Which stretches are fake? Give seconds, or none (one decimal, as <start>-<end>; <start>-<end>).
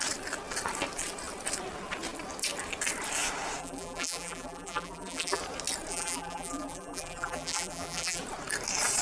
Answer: 3.6-5.4; 5.9-8.2